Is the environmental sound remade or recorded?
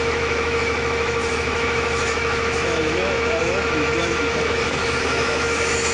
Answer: remade